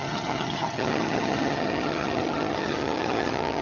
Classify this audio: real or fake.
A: fake